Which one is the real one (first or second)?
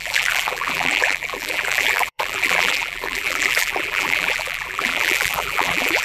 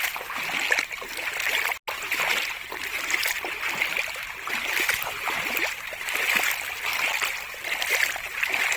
second